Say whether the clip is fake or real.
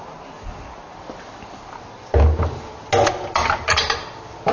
real